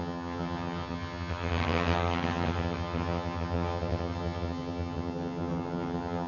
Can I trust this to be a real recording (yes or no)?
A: no